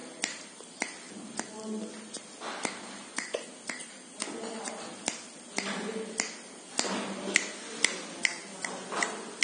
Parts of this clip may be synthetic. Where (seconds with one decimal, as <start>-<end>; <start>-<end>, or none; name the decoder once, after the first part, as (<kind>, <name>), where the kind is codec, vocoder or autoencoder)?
none